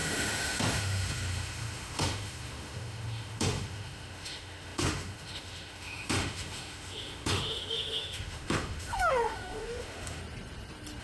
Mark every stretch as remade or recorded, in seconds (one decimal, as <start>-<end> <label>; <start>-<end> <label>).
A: 0.0-10.2 remade; 10.2-11.0 recorded